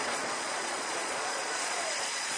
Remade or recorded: remade